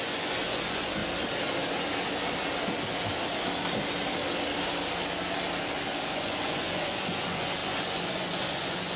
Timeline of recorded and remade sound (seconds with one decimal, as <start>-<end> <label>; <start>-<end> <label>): 0.0-1.0 remade; 1.0-6.1 recorded; 6.1-9.0 remade

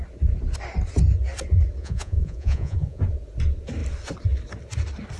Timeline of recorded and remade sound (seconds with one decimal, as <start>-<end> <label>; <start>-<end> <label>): 0.0-1.8 recorded; 1.8-3.0 remade; 3.0-5.2 recorded

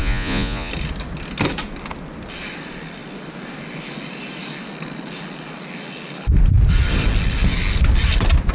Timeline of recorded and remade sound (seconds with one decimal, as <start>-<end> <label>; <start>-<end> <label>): 0.0-0.7 remade; 0.7-8.5 recorded